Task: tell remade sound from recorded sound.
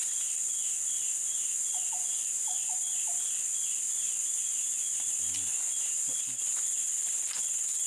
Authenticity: recorded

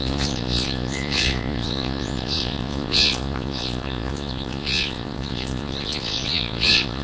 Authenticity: remade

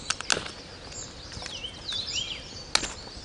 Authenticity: recorded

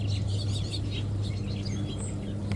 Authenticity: recorded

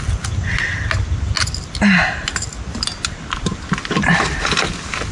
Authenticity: recorded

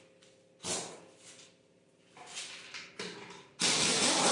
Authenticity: recorded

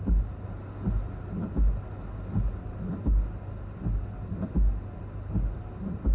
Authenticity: recorded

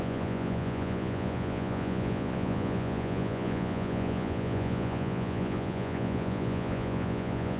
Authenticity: remade